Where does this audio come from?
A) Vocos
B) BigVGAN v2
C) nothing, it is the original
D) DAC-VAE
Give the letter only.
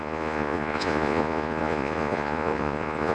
A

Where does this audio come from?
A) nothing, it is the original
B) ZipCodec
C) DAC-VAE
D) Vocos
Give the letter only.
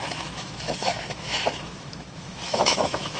C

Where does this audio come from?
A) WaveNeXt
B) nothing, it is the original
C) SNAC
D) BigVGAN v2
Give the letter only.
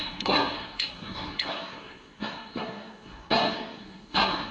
C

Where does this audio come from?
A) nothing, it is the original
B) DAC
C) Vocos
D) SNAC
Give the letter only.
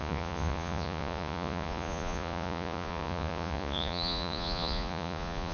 C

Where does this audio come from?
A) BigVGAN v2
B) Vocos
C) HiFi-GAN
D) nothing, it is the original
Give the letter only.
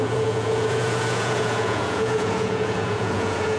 B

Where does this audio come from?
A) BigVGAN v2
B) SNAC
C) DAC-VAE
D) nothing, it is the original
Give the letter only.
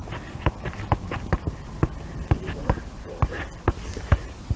D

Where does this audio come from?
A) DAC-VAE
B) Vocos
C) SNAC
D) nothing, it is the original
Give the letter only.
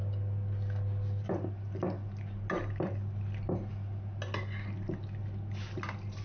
D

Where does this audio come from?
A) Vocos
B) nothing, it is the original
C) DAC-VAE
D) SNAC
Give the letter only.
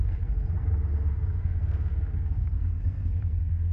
D